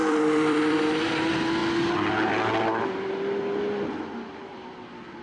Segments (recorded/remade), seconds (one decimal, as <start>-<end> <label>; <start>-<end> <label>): 0.0-0.8 remade; 0.8-5.2 recorded